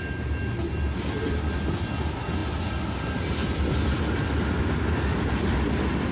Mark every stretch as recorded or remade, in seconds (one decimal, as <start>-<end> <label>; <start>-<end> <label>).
0.0-6.1 recorded